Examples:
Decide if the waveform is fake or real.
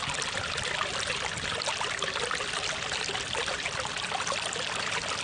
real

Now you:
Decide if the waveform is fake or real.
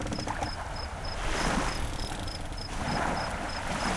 real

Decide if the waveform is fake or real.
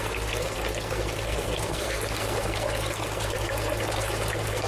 fake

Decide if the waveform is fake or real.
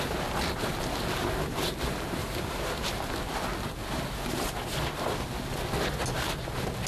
real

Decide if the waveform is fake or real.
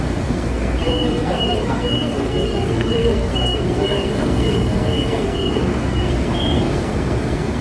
fake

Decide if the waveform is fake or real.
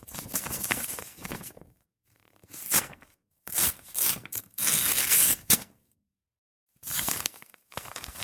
fake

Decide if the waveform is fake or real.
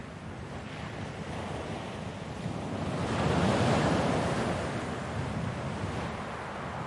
real